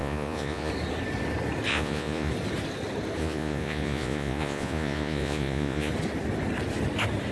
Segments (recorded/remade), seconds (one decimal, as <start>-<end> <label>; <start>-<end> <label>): 0.0-0.7 remade; 0.7-1.7 recorded; 1.7-2.3 remade; 2.3-3.2 recorded; 3.2-5.9 remade; 5.9-7.3 recorded